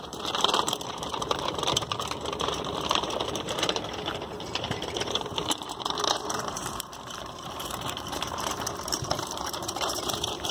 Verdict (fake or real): fake